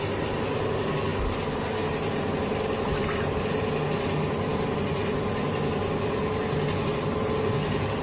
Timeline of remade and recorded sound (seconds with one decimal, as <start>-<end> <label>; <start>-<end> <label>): 0.0-8.0 recorded